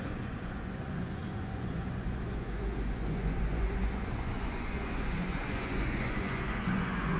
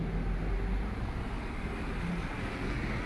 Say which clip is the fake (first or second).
first